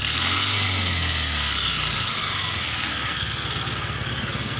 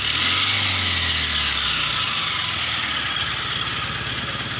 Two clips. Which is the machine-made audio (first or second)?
first